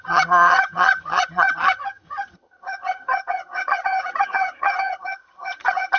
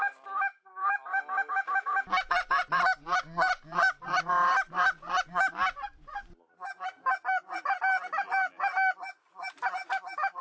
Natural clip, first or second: second